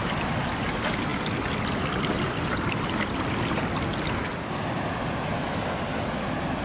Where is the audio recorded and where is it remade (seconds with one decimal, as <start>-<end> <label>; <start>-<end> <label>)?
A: 0.0-6.6 recorded